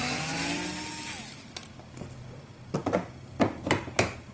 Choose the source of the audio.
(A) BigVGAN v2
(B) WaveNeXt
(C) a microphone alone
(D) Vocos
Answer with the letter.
C